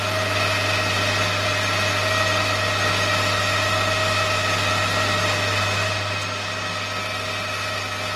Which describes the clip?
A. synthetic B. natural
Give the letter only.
B